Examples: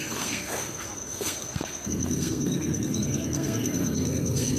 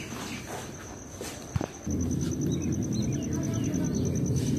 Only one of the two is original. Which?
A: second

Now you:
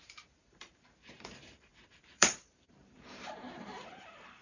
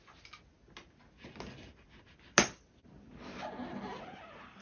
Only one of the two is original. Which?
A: second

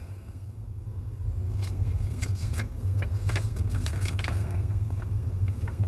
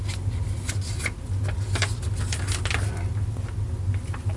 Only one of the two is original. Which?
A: second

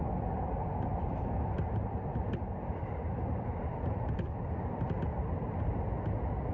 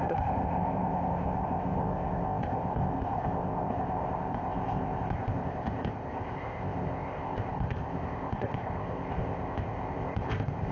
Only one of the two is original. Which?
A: first